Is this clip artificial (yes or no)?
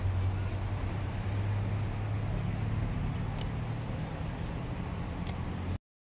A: no